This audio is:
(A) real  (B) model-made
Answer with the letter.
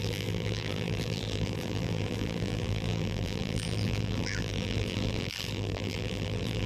B